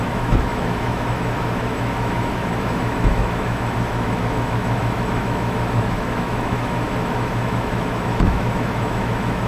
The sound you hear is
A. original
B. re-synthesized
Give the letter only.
B